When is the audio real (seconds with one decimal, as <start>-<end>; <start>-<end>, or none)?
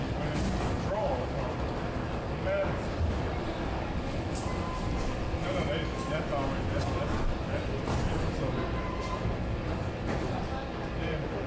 0.0-11.5